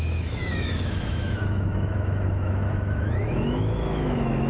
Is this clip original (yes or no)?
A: no